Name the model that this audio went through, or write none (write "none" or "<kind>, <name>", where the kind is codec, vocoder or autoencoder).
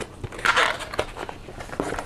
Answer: none